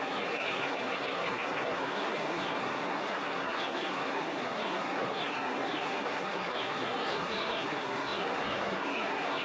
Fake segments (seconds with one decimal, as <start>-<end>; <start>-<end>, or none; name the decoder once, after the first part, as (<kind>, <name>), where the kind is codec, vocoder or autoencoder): 0.0-9.4 (codec, SNAC)